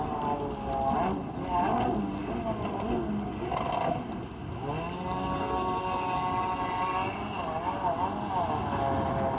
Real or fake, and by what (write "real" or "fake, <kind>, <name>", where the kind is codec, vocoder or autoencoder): real